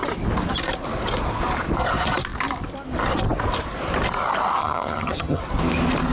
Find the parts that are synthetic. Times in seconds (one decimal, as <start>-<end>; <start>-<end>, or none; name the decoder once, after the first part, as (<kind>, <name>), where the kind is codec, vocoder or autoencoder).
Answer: 4.6-5.4 (vocoder, HiFi-GAN)